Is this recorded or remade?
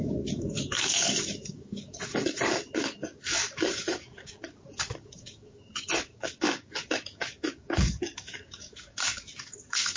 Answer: remade